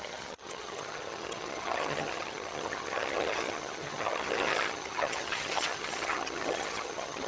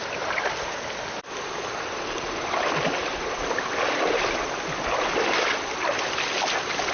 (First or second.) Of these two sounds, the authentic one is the second